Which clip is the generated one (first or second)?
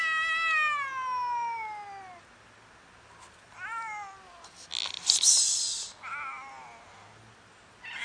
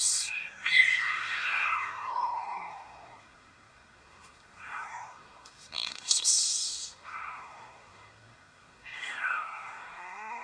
second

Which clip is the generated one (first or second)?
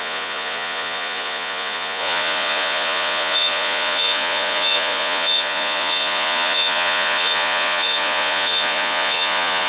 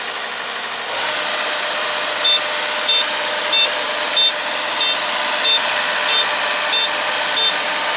first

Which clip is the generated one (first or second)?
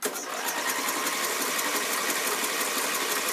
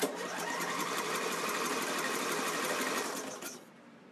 second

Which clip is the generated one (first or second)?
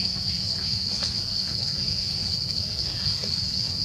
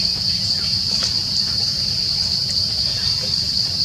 first